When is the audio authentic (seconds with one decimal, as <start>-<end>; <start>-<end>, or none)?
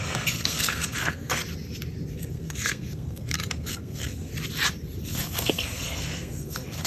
1.4-2.1; 4.3-5.0